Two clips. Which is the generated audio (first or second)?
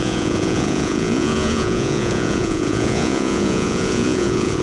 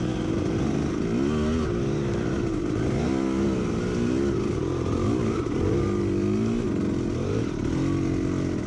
first